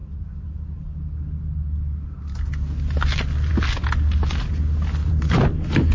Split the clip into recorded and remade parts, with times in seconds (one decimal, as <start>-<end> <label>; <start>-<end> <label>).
0.0-5.0 recorded; 5.0-5.9 remade